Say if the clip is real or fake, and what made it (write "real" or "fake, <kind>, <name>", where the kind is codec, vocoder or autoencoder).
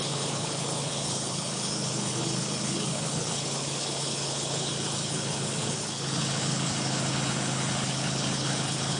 fake, codec, HILCodec